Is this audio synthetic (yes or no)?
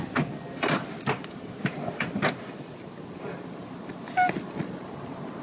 no